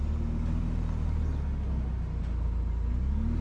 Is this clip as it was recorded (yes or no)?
yes